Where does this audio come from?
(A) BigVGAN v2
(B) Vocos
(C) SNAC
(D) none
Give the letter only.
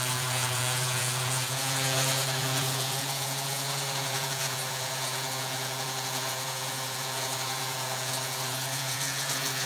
B